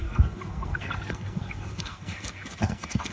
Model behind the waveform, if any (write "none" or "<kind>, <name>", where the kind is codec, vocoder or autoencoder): codec, SNAC